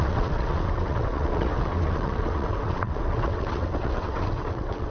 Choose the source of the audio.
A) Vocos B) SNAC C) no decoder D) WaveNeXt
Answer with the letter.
D